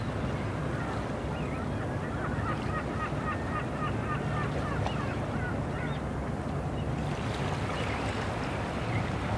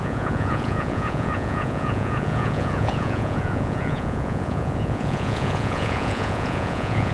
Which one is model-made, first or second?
second